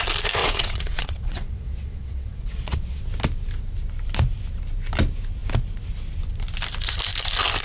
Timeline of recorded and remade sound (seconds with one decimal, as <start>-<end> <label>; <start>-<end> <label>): 0.0-0.4 recorded; 0.4-3.0 remade; 3.0-7.6 recorded

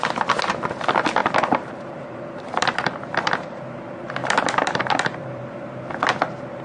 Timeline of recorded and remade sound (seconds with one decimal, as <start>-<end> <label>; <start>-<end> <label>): 0.0-1.2 recorded; 1.2-3.3 remade; 3.3-4.2 recorded; 4.2-5.5 remade; 5.5-6.6 recorded

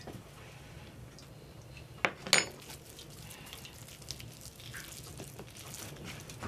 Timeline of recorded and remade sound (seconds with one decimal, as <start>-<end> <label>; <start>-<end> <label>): 0.0-1.2 remade; 1.2-5.1 recorded; 5.1-6.5 remade

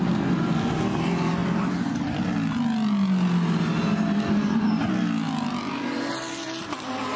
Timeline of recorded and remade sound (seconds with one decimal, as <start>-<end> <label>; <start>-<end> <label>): 0.0-7.2 recorded

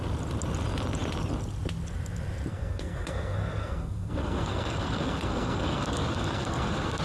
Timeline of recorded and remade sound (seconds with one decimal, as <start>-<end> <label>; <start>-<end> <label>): 0.0-2.5 recorded; 2.5-7.0 remade